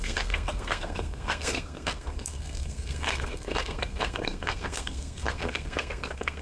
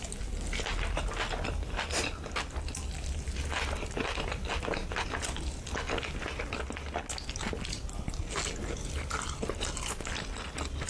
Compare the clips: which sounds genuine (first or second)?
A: second